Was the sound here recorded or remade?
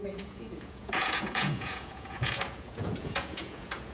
remade